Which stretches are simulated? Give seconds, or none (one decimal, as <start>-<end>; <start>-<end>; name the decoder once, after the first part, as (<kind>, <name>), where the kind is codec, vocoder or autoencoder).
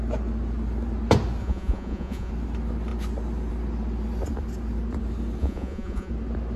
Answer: 1.4-2.3 (vocoder, Vocos); 5.4-6.1